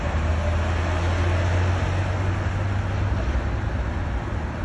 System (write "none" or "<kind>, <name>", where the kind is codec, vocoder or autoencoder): none